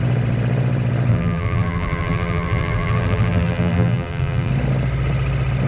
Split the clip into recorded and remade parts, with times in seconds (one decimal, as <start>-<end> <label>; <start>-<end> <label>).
0.0-1.1 recorded; 1.1-4.5 remade; 4.5-5.7 recorded